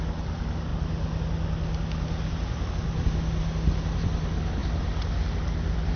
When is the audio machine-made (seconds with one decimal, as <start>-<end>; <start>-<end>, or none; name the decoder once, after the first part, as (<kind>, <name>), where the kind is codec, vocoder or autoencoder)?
none